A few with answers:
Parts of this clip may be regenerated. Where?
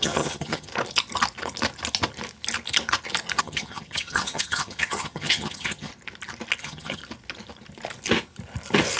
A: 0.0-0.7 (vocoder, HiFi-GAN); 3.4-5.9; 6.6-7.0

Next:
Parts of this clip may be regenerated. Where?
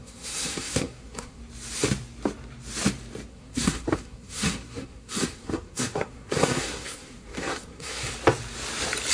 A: 0.0-1.4 (codec, SNAC); 3.3-8.1